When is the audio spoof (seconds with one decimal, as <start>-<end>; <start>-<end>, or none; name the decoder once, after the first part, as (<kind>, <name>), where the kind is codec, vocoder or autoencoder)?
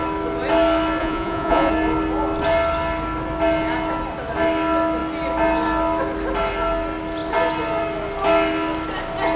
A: 1.0-1.7 (vocoder, Vocos)